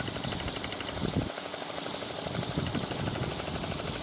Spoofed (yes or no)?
yes